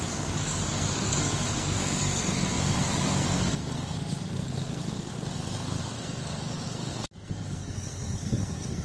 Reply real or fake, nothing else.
fake